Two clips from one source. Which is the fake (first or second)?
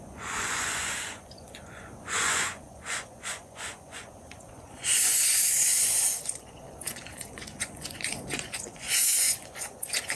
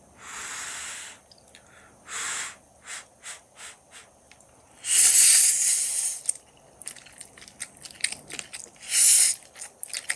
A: first